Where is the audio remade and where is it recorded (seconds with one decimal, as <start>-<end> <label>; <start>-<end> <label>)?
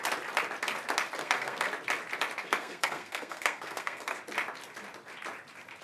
0.0-1.2 recorded; 1.2-1.7 remade; 1.7-2.4 recorded; 2.4-4.2 remade; 4.2-5.8 recorded